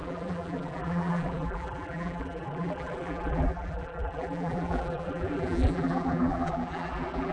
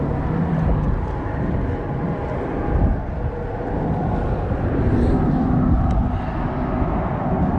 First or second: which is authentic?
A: second